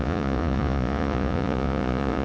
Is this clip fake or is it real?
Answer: fake